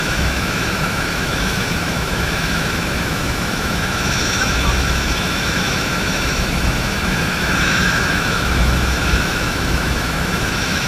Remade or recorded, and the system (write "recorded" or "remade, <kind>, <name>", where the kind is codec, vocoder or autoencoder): remade, autoencoder, DAC-VAE